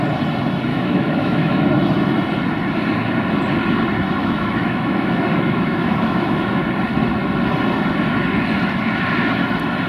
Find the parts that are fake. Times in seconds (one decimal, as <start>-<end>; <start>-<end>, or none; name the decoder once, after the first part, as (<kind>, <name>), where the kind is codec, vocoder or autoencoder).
0.7-1.6 (autoencoder, DAC-VAE); 4.2-6.6